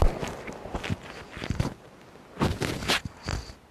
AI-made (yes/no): no